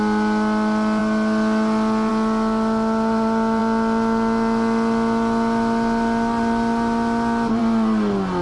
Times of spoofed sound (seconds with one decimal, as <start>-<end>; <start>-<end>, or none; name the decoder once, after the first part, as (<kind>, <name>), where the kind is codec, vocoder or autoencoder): none